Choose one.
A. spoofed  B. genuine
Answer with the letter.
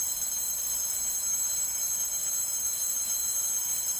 B